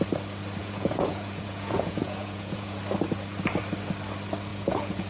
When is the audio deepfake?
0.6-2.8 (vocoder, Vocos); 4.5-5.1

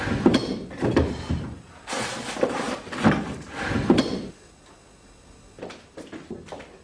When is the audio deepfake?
0.4-1.6 (vocoder, BigVGAN v2)